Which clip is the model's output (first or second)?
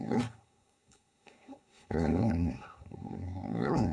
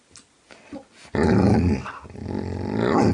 first